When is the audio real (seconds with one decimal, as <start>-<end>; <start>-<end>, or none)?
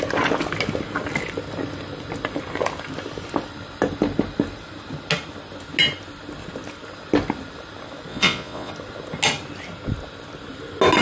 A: 0.0-8.1; 8.7-11.0